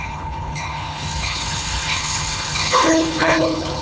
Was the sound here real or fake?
fake